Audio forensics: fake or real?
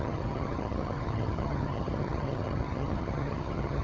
fake